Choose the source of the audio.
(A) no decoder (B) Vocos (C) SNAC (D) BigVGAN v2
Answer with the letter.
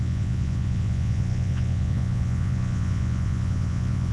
B